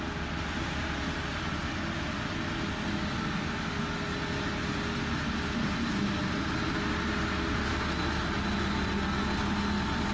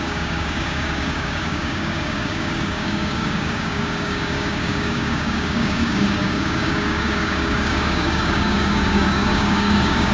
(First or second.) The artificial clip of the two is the second